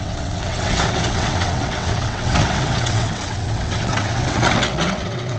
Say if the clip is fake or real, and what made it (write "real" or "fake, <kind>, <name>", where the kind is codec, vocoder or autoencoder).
fake, vocoder, WaveNeXt